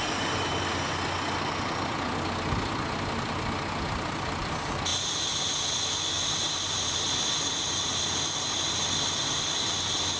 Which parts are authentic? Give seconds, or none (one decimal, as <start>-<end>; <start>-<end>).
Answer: 0.0-10.2